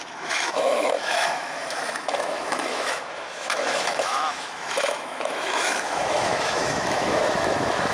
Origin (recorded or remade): remade